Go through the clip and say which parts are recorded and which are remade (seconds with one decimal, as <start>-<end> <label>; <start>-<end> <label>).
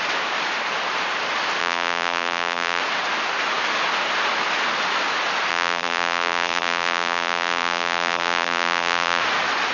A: 0.0-1.6 recorded; 1.6-2.8 remade; 2.8-5.5 recorded; 5.5-9.2 remade; 9.2-9.7 recorded